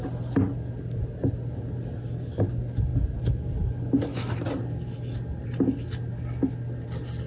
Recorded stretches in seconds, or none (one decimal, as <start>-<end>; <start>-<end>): 0.0-7.3